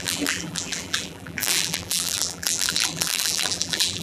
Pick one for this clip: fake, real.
fake